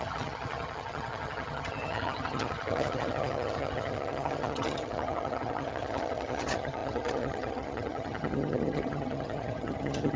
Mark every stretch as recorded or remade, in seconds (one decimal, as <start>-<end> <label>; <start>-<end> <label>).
0.0-10.2 remade